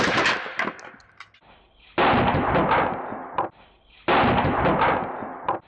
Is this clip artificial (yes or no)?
no